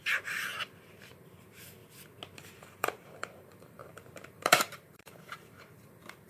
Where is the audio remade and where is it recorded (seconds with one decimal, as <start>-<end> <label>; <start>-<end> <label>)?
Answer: 0.0-0.5 remade; 0.5-1.2 recorded; 1.2-1.8 remade; 1.8-2.4 recorded; 2.4-6.3 remade